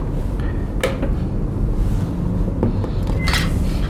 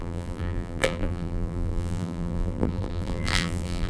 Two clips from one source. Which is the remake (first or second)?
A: second